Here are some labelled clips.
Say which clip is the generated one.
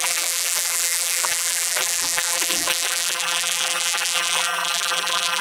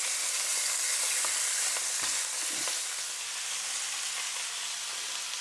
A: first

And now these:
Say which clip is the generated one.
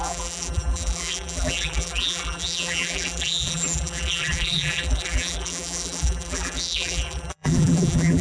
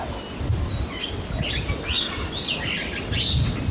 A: first